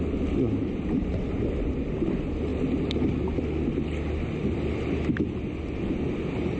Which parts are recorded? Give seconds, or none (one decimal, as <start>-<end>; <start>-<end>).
0.0-6.6